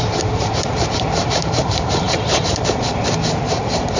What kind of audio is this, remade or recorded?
remade